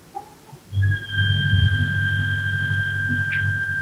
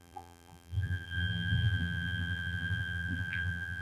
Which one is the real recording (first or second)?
first